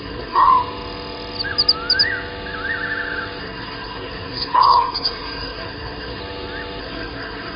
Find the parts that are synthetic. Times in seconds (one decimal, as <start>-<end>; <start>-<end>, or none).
0.0-0.5; 3.4-6.2; 6.8-7.6